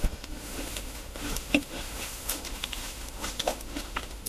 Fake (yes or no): yes